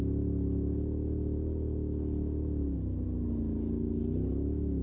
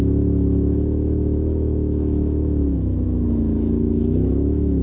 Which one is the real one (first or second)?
first